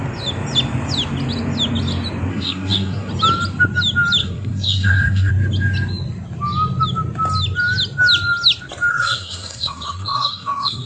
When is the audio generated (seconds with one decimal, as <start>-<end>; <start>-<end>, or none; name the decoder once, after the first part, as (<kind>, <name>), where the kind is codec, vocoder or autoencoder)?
2.3-3.1 (codec, SNAC); 4.2-5.3; 8.9-10.9